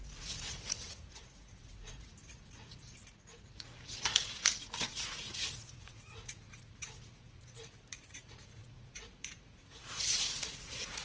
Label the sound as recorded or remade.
remade